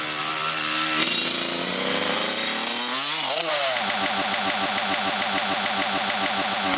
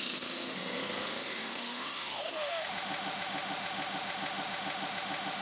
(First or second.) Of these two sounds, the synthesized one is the second